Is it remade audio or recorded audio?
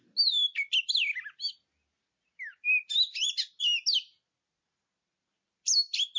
recorded